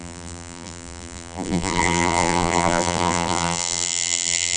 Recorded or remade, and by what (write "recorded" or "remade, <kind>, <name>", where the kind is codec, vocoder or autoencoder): remade, vocoder, BigVGAN v2